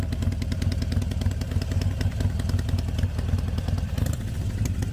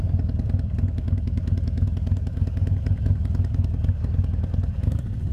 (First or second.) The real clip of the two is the first